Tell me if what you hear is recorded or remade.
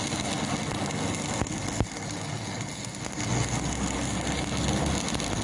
recorded